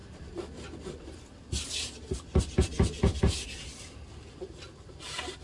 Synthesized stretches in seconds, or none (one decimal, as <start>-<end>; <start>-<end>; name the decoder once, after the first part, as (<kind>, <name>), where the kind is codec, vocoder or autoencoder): none